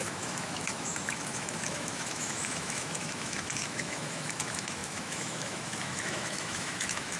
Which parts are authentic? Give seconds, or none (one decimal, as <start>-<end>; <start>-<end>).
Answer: none